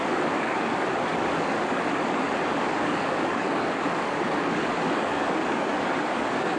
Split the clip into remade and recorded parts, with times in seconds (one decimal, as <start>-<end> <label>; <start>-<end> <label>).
0.0-6.6 remade